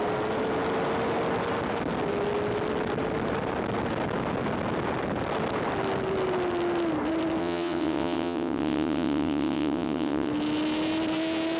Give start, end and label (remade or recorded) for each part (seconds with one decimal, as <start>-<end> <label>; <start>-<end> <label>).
0.0-7.4 recorded; 7.4-10.3 remade; 10.3-11.6 recorded